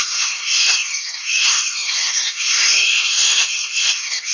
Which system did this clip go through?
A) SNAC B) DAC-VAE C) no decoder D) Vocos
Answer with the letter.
A